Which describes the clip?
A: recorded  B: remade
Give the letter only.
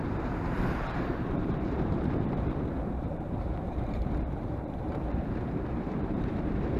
B